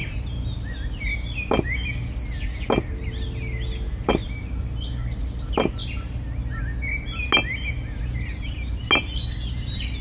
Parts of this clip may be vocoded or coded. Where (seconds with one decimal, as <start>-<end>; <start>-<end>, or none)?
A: none